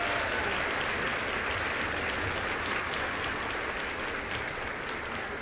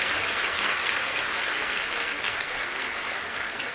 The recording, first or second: first